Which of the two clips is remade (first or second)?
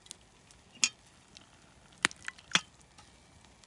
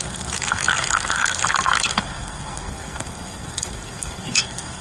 second